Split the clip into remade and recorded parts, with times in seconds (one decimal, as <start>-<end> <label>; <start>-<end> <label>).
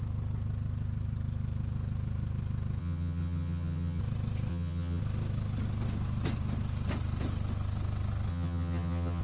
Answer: 0.0-2.8 recorded; 2.8-4.0 remade; 4.0-4.5 recorded; 4.5-5.0 remade; 5.0-8.3 recorded; 8.3-9.2 remade